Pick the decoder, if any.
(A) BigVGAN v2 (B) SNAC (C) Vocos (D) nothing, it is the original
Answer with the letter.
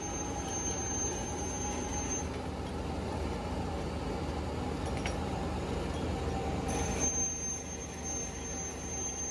D